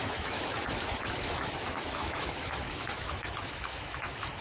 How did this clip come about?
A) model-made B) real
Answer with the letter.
A